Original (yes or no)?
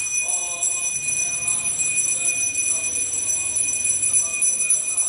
yes